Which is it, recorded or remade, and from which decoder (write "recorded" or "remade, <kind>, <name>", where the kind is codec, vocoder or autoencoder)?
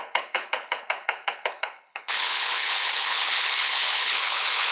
remade, codec, HILCodec